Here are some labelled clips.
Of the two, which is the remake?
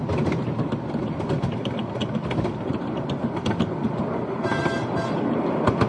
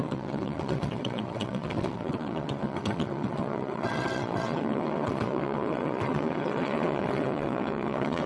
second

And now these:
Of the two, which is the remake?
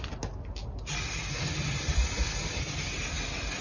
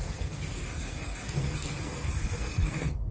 second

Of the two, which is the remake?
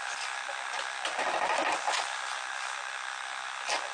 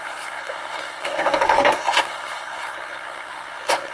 second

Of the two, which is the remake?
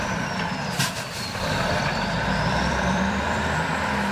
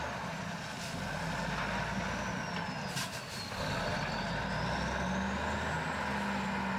first